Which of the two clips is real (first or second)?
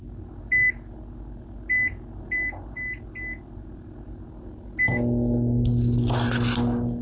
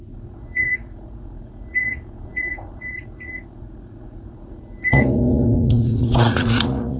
first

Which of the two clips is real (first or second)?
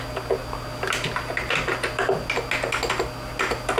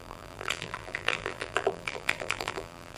first